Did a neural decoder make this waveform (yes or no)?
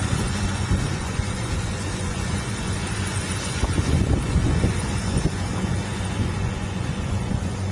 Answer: yes